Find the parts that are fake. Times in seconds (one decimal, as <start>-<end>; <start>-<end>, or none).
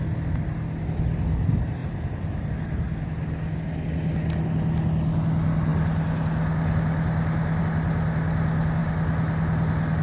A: 1.8-2.5